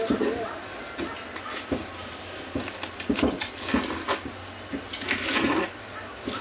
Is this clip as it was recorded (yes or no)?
yes